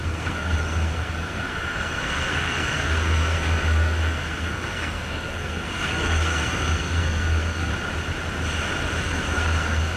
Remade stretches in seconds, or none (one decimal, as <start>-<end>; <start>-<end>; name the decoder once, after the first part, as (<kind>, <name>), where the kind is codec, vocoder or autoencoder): 0.0-7.7 (codec, SNAC); 9.0-10.0